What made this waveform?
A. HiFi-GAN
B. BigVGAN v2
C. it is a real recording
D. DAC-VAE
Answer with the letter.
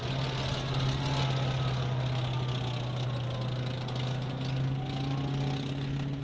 C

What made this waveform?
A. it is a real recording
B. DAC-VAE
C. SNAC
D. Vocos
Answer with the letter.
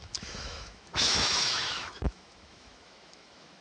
B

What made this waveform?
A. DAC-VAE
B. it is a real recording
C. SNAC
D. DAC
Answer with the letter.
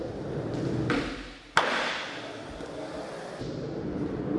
B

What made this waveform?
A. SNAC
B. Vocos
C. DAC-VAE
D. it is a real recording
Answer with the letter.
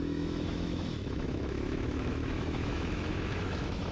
C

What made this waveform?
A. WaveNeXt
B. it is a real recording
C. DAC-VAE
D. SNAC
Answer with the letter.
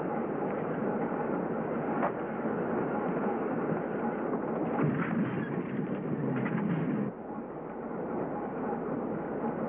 B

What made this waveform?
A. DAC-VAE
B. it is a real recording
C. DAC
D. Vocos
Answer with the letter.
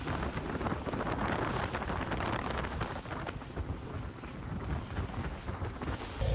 B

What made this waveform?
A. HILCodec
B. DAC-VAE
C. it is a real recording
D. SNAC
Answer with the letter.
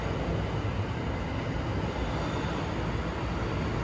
C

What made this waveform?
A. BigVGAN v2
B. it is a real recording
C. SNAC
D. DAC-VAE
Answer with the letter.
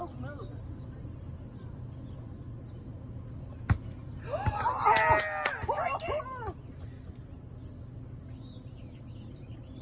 B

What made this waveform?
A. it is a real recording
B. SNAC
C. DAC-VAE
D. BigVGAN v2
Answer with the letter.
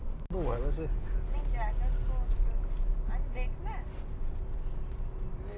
A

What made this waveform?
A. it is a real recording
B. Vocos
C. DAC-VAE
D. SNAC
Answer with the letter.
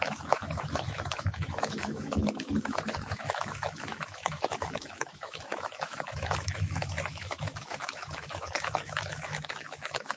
C